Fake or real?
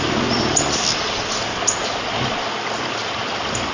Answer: real